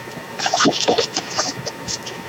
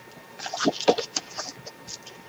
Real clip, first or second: second